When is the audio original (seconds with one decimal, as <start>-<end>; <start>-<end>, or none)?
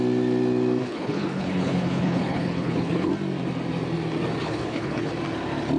0.0-0.8; 3.1-4.4; 5.1-5.8